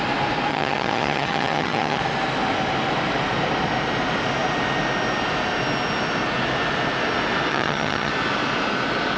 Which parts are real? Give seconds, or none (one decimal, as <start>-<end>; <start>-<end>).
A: 0.0-0.5; 2.0-7.5; 8.1-9.2